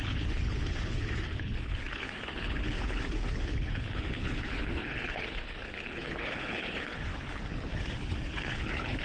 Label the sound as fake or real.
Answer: fake